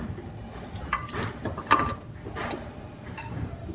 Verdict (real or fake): real